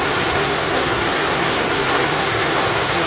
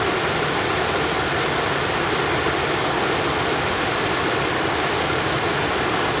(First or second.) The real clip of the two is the second